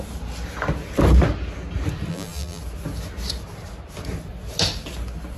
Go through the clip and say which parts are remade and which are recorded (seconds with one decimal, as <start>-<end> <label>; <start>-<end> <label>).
0.0-2.1 recorded; 2.1-2.6 remade; 2.6-5.4 recorded